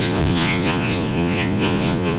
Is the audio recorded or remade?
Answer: remade